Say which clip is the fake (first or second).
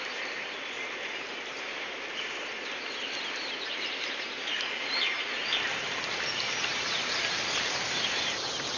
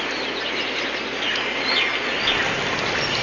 first